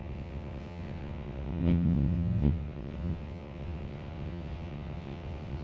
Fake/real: fake